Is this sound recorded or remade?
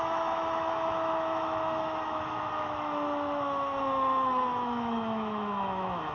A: remade